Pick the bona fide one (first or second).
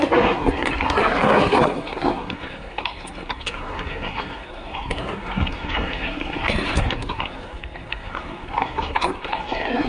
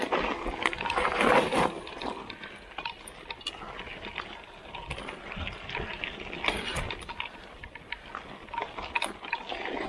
second